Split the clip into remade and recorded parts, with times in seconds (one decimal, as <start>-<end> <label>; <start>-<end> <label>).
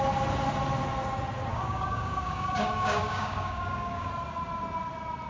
0.0-1.5 recorded; 1.5-4.1 remade; 4.1-5.3 recorded